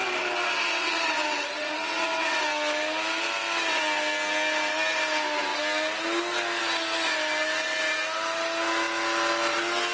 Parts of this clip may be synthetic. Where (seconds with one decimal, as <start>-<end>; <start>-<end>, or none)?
0.0-2.4